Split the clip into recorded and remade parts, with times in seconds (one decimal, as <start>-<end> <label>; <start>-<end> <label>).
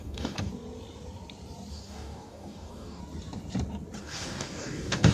0.0-0.5 remade; 0.5-1.7 recorded; 1.7-3.0 remade; 3.0-4.0 recorded; 4.0-5.1 remade